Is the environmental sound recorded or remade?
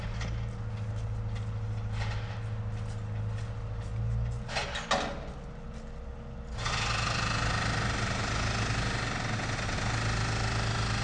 recorded